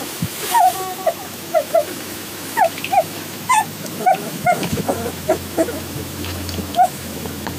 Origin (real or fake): fake